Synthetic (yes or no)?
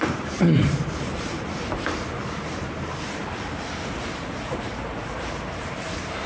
yes